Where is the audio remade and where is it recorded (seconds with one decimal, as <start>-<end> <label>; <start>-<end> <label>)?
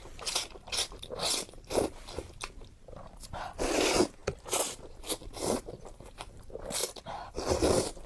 0.0-8.1 remade